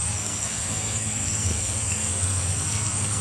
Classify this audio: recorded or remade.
remade